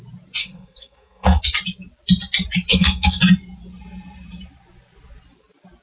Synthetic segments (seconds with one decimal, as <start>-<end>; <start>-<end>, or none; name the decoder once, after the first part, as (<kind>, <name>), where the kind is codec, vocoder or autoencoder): 0.4-1.4 (codec, SNAC); 2.7-3.2